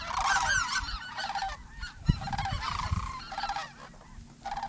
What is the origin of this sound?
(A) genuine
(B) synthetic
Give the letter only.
A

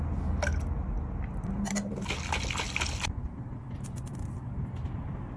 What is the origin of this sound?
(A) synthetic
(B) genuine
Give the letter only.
B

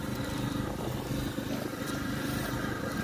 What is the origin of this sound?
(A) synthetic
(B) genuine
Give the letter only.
A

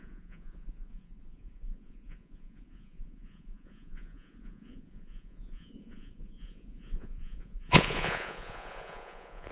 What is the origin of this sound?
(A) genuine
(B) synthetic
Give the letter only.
B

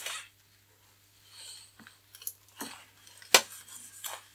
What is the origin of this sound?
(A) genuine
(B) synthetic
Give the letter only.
A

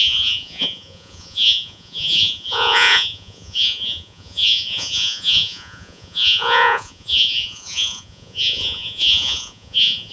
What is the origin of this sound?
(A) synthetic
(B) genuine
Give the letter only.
A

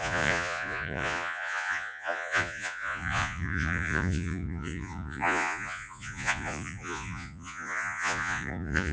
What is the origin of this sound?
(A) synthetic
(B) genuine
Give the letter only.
A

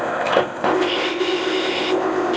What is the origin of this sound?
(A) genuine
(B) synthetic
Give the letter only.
B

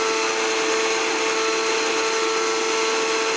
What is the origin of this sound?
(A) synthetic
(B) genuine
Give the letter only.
B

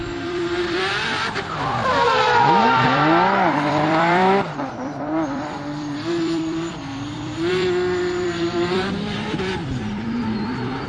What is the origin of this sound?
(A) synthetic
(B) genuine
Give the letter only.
A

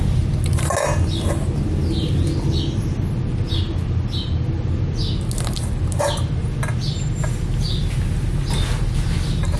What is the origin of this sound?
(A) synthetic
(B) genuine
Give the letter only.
B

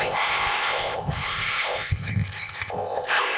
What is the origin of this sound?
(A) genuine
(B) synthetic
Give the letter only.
B